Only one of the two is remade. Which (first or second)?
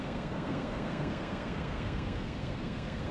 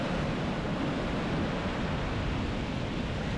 first